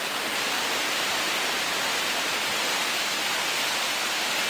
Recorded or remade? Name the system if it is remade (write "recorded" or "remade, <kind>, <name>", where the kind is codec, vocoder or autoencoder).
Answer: recorded